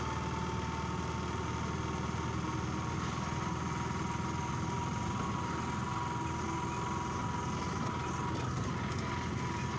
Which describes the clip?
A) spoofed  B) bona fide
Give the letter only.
B